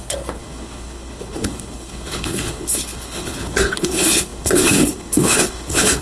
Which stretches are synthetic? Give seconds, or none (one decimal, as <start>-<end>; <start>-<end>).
0.0-6.0